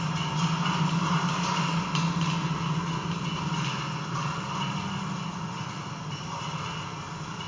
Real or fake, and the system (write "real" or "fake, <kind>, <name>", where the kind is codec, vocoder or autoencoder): real